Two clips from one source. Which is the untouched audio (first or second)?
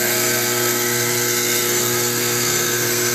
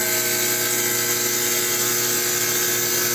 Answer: second